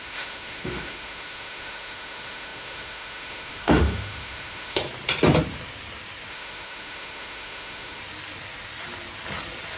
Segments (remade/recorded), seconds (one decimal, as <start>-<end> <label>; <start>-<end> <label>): 0.0-4.8 remade; 4.8-6.3 recorded; 6.3-8.0 remade; 8.0-9.8 recorded